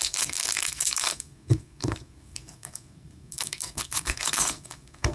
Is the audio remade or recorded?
remade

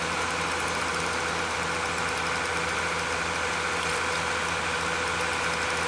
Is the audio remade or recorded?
recorded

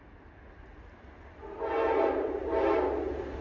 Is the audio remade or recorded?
recorded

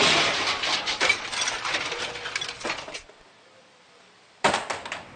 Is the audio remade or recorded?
remade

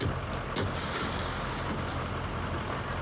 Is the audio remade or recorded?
recorded